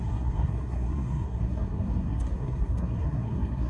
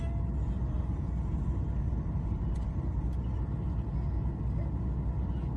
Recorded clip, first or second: second